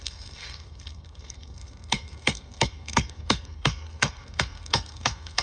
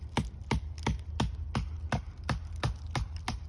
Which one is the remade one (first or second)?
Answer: first